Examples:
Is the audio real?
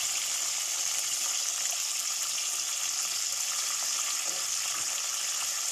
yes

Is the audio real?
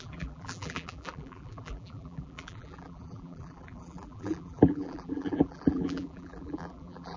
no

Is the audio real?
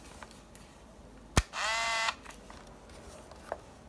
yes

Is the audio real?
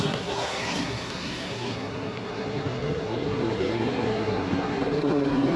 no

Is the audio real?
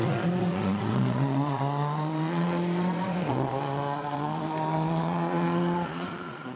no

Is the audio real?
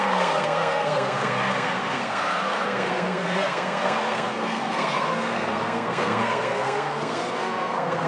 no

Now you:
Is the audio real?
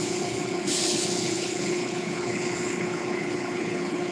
no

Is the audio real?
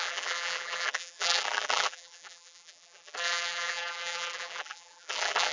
no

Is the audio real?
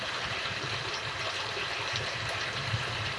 no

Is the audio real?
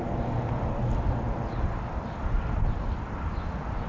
yes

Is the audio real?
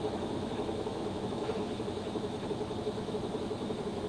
no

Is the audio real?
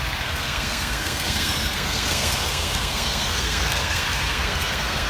no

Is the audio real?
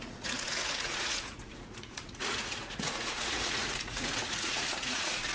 no